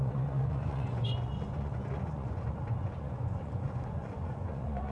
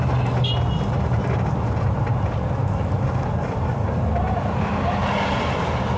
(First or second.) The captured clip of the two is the second